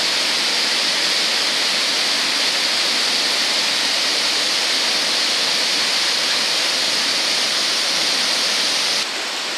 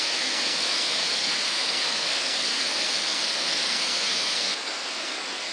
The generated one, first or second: second